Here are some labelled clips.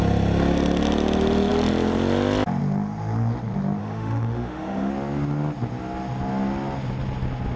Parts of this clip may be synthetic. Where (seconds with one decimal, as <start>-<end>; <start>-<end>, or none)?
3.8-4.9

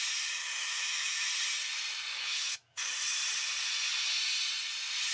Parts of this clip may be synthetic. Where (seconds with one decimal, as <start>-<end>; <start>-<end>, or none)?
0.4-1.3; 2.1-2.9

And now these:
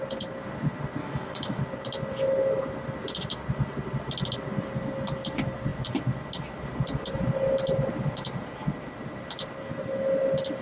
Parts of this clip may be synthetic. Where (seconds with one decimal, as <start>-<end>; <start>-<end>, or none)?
1.0-1.6

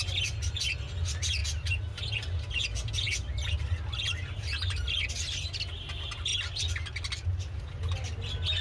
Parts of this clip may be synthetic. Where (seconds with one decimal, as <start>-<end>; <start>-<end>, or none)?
none